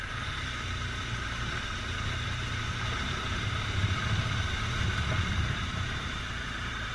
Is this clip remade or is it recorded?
remade